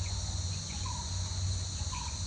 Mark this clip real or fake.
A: fake